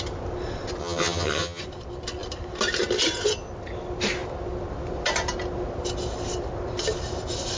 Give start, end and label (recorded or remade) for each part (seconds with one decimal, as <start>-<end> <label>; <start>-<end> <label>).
0.0-0.8 recorded; 0.8-1.6 remade; 1.6-7.6 recorded